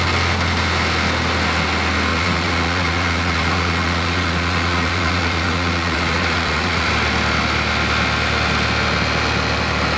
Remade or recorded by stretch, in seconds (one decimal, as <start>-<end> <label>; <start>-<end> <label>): 0.0-2.1 recorded; 2.1-6.9 remade; 6.9-10.0 recorded